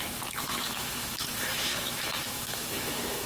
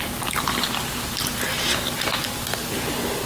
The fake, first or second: first